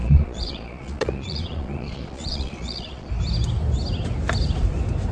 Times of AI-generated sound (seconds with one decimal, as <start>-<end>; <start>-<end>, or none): 0.0-3.1